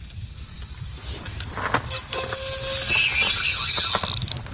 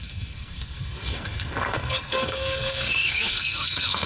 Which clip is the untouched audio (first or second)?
first